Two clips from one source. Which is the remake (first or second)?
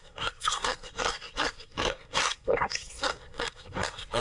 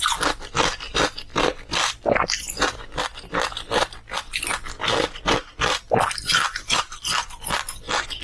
first